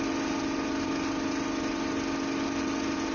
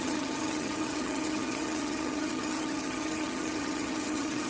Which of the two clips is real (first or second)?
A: first